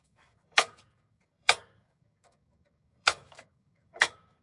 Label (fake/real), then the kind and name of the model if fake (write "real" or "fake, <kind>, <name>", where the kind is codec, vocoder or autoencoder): fake, codec, DAC